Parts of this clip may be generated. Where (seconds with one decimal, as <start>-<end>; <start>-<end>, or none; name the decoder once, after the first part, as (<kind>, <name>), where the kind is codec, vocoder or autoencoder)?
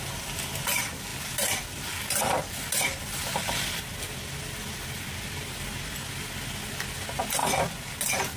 none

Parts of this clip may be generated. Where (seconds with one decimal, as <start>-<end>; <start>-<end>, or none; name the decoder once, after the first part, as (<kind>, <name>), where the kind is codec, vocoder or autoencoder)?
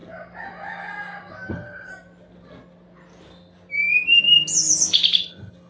1.5-1.9 (codec, HILCodec); 5.3-5.7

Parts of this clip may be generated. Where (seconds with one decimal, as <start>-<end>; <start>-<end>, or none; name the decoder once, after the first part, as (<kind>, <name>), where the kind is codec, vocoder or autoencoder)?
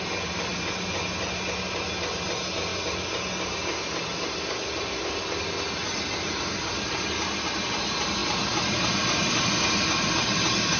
none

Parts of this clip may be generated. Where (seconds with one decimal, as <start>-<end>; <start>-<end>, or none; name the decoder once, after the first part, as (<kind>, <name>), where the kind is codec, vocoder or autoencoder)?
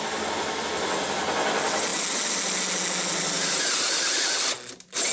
none